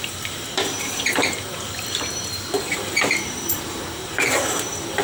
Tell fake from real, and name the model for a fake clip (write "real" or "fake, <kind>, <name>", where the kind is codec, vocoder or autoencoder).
fake, vocoder, BigVGAN v2